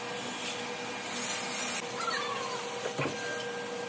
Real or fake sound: real